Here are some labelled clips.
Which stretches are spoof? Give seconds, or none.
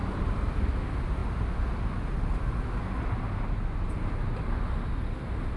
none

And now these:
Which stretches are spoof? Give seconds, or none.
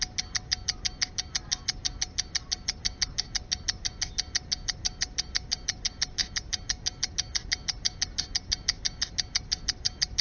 none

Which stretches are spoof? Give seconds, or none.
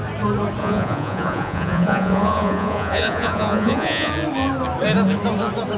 0.6-4.1 (vocoder, Vocos)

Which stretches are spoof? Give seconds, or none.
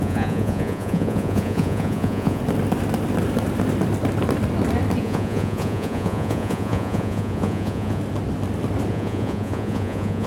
0.0-2.4 (vocoder, Vocos); 5.0-8.0; 8.9-10.3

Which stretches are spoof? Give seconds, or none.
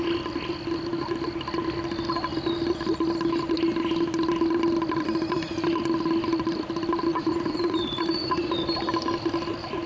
7.1-8.5 (vocoder, Vocos)